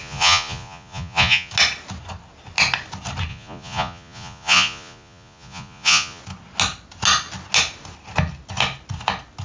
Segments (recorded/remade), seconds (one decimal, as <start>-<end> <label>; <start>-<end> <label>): 0.0-1.5 remade; 1.5-3.3 recorded; 3.3-6.2 remade; 6.2-9.4 recorded